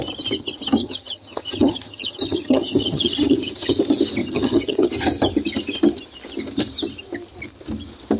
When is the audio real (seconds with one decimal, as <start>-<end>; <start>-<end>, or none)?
0.0-0.8; 3.8-4.2; 4.9-8.2